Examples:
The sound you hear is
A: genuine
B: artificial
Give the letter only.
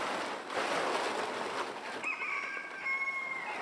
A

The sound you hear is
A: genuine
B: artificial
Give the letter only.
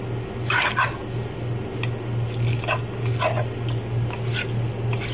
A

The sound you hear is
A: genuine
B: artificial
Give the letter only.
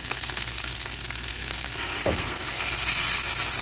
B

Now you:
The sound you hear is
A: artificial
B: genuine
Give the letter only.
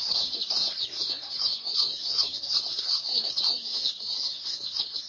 A